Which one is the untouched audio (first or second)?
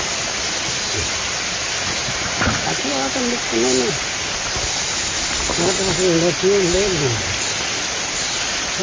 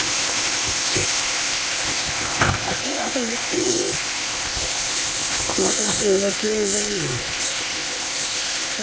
first